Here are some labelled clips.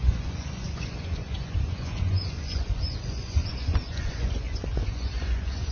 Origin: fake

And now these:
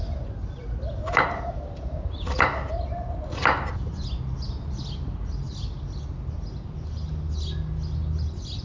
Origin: real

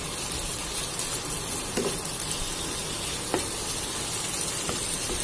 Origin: real